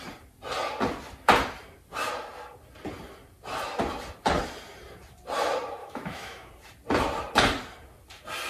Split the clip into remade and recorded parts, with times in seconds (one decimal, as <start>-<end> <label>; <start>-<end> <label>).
0.0-5.8 recorded; 5.8-6.5 remade; 6.5-8.5 recorded